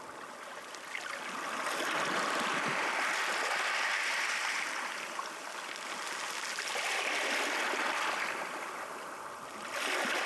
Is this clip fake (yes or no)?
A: no